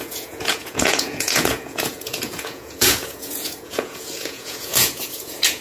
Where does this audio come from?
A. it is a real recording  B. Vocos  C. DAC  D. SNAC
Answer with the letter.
B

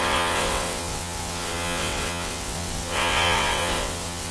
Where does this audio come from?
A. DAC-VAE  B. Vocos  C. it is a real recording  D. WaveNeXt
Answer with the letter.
D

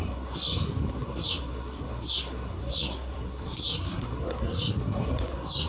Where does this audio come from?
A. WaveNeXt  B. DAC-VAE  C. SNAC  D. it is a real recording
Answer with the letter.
C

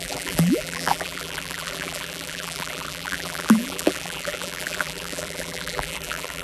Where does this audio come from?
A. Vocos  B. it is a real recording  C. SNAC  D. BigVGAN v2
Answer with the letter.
D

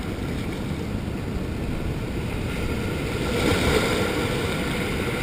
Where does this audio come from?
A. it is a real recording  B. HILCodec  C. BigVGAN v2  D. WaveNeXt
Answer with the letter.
A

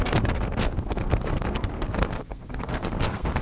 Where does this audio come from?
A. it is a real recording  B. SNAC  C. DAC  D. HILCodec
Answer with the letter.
B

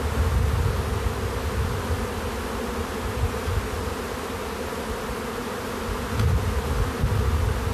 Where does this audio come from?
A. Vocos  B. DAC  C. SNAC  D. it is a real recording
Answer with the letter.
D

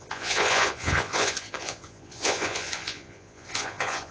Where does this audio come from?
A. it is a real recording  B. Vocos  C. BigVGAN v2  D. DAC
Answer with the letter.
B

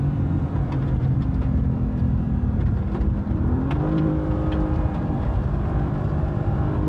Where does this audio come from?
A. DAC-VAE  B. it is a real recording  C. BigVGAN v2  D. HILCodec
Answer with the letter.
C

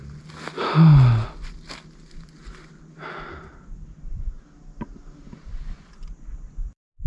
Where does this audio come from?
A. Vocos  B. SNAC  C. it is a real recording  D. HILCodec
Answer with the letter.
C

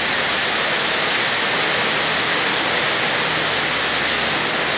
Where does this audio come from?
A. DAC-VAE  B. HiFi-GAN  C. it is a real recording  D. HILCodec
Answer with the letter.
C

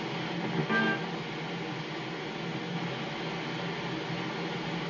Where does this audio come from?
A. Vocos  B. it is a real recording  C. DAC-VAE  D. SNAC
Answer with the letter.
B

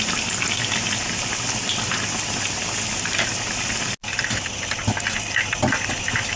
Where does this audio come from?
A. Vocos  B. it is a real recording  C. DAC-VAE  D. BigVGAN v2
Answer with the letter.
B